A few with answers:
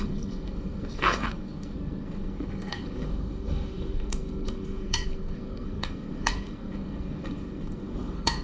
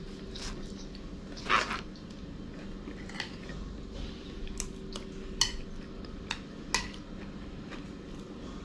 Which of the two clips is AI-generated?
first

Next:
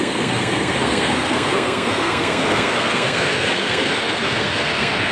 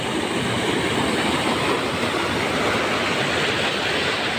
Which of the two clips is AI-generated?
first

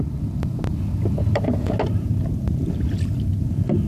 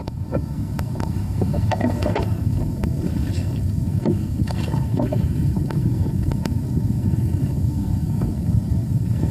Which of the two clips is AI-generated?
second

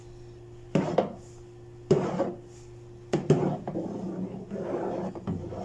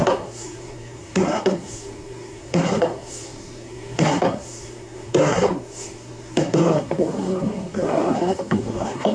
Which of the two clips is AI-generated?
second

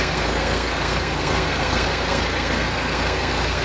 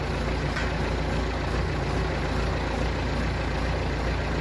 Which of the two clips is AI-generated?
first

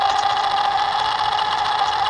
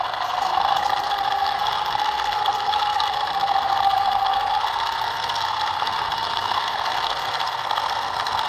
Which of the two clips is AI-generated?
second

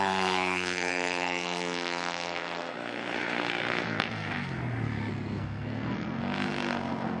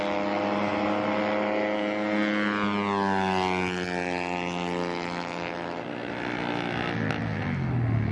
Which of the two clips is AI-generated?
first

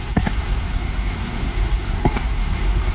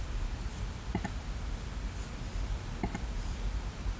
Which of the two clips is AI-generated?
first